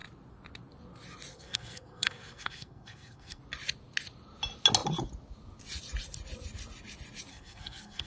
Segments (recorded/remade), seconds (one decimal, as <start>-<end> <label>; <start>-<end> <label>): 0.0-1.3 recorded; 1.3-3.4 remade; 3.4-7.3 recorded; 7.3-8.1 remade